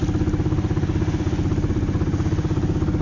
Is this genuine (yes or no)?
yes